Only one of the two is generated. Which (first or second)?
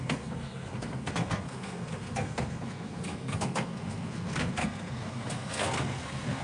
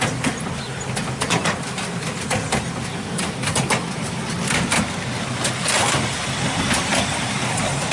first